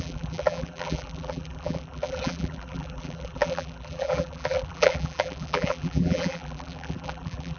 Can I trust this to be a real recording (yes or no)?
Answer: no